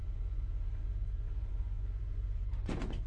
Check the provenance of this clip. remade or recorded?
remade